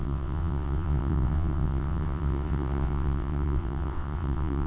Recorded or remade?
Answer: remade